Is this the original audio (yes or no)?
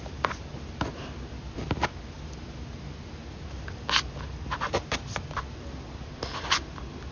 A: yes